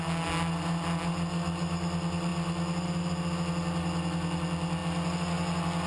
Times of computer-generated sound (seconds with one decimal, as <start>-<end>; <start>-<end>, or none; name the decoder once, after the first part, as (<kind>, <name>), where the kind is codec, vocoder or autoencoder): none